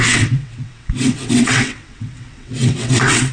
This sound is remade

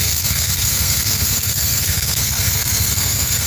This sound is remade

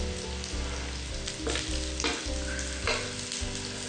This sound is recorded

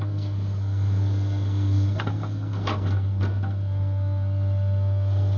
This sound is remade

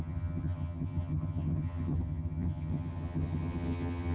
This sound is remade